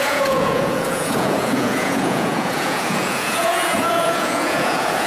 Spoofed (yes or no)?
yes